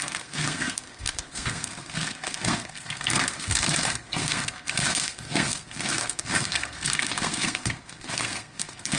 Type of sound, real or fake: fake